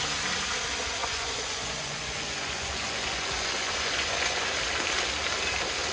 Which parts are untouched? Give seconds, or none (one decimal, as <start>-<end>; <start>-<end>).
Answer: 0.0-1.0; 4.5-5.9